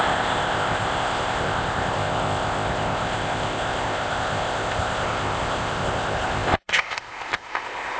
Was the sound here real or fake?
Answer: fake